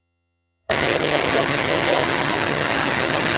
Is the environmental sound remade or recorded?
remade